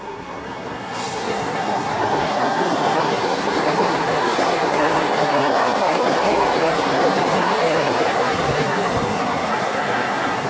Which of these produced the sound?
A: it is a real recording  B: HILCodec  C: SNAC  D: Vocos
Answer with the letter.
C